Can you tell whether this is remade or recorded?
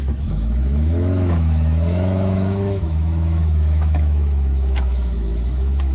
remade